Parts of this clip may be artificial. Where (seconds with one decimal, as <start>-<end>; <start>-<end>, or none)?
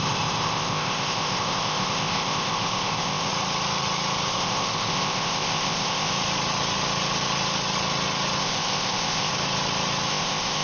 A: 0.0-3.3; 4.3-6.1; 8.4-9.3; 10.1-10.6